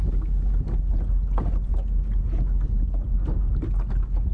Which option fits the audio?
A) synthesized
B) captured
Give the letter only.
B